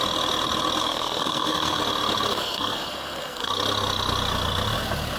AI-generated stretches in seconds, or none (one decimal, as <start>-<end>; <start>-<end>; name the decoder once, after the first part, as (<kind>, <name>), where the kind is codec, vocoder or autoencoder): 0.8-1.8 (codec, SNAC); 2.3-3.5